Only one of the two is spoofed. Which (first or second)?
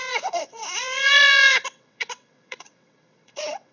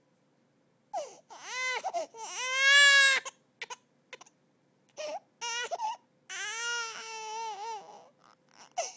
first